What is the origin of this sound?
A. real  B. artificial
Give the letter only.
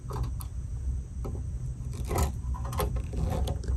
A